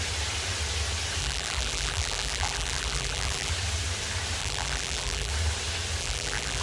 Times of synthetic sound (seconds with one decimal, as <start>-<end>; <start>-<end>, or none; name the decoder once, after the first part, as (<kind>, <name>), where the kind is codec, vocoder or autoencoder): 1.2-3.5 (vocoder, BigVGAN v2); 4.4-5.3; 6.0-6.6